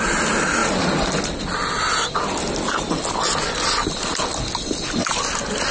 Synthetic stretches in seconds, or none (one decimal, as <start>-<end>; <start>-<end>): none

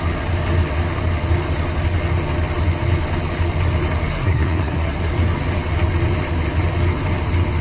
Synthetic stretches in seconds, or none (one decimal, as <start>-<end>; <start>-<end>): 4.1-5.1